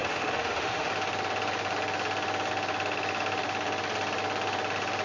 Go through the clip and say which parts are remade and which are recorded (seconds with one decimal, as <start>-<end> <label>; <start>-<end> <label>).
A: 0.0-0.9 remade; 0.9-5.0 recorded